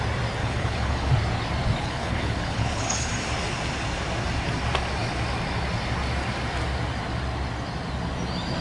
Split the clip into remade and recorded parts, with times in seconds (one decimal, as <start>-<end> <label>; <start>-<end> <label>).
0.0-0.4 recorded; 0.4-1.1 remade; 1.1-1.8 recorded; 1.8-3.1 remade; 3.1-8.6 recorded